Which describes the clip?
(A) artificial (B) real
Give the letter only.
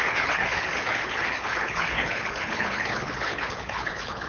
A